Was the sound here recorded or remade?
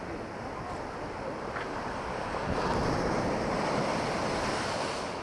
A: recorded